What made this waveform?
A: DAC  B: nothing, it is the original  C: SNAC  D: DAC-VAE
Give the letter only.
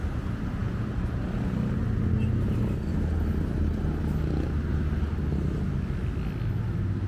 B